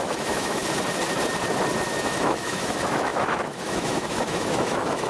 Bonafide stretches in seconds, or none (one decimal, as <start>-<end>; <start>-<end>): 0.6-2.0